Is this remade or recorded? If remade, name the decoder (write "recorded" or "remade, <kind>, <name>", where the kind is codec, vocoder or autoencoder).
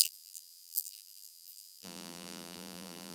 remade, vocoder, BigVGAN v2